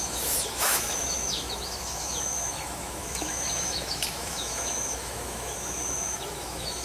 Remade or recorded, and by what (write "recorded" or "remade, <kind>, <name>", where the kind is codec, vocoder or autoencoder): remade, autoencoder, DAC-VAE